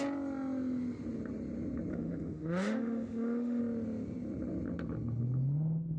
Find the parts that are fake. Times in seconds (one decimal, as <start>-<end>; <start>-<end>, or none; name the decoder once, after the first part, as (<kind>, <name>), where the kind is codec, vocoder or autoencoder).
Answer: 1.9-3.6 (autoencoder, DAC-VAE)